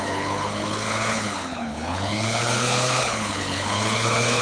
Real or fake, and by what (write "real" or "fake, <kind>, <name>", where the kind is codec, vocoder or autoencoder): fake, codec, HILCodec